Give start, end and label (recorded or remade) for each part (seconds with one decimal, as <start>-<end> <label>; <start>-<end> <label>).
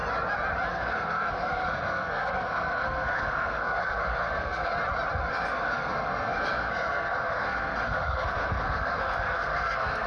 0.0-0.7 recorded; 0.7-4.7 remade; 4.7-5.3 recorded; 5.3-10.1 remade